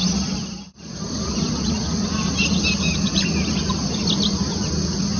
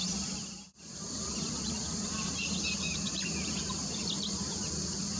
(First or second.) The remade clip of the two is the second